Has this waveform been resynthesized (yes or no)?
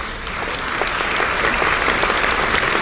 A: no